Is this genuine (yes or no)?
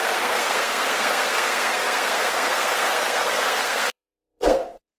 no